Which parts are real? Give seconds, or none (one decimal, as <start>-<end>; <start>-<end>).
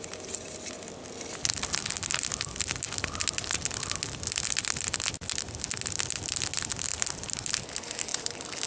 0.0-8.1